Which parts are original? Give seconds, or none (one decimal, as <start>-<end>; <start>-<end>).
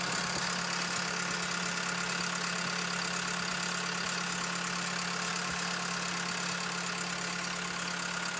0.0-8.4